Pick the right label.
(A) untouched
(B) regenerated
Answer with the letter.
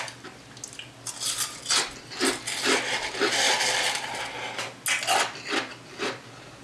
A